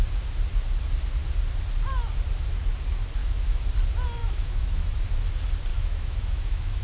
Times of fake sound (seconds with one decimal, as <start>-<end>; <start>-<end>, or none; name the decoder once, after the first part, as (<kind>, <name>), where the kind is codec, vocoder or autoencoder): 3.2-3.7 (autoencoder, DAC-VAE); 4.2-4.9; 5.7-6.8